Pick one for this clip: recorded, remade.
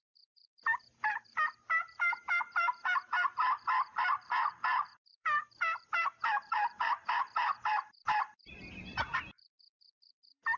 remade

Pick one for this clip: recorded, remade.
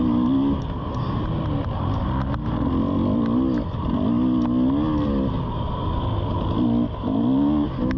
recorded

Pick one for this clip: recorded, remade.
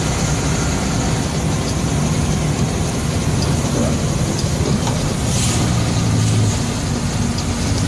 recorded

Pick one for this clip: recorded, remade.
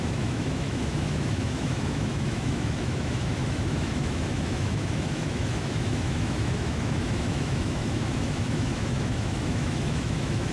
remade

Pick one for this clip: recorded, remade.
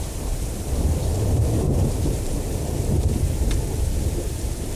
remade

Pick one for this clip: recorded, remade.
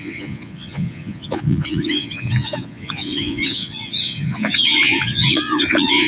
remade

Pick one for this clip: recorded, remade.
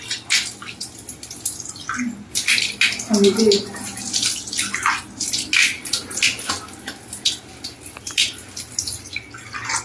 recorded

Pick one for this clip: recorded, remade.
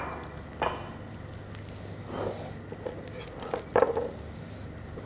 recorded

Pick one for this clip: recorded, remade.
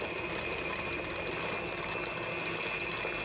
recorded